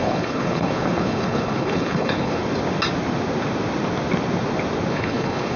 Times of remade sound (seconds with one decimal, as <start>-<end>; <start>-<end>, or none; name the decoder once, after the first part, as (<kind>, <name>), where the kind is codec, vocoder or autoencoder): 0.0-2.4 (codec, HILCodec); 4.9-5.6